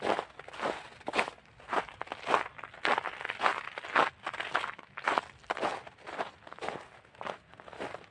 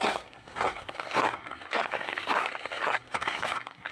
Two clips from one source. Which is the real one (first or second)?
first